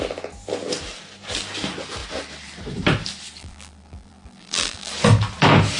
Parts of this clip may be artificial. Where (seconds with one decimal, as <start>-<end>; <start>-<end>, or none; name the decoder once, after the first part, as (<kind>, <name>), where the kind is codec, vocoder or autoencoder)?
3.4-4.9 (vocoder, BigVGAN v2)